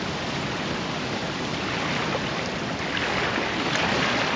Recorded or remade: recorded